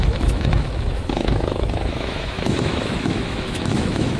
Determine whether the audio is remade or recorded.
remade